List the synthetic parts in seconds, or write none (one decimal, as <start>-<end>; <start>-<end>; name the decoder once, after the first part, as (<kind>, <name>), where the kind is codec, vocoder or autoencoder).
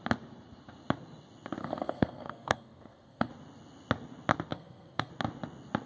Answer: 1.6-3.3 (codec, SNAC); 4.5-5.1